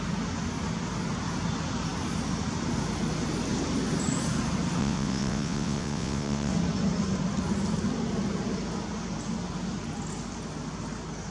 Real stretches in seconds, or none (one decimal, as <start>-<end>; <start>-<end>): 0.0-4.8; 6.5-11.3